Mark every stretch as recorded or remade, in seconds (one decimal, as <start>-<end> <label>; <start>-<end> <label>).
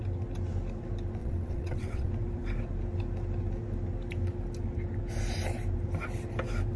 0.0-1.2 recorded; 1.2-2.1 remade; 2.1-6.8 recorded